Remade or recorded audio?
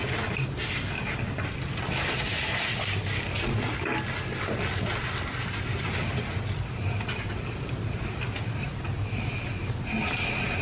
recorded